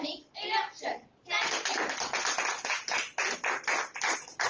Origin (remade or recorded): recorded